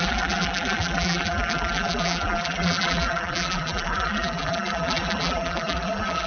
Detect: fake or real fake